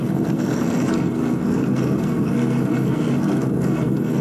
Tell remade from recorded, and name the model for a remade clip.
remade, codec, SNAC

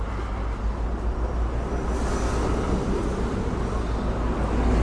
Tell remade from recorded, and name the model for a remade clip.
recorded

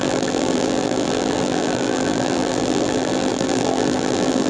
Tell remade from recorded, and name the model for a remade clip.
remade, vocoder, BigVGAN v2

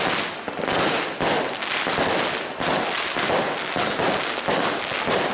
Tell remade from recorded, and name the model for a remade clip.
recorded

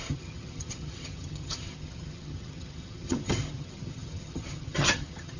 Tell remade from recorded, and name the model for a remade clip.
remade, vocoder, HiFi-GAN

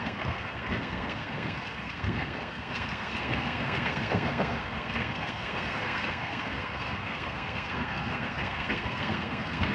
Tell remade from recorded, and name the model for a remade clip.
remade, codec, SNAC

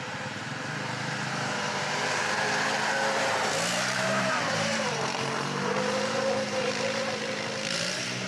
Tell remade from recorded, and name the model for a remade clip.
remade, vocoder, BigVGAN v2